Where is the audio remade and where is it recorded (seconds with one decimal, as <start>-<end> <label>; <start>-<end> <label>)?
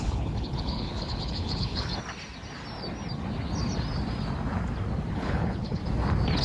0.0-1.9 remade; 1.9-5.1 recorded; 5.1-5.8 remade; 5.8-6.4 recorded